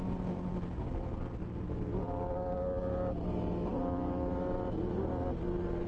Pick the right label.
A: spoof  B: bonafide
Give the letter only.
B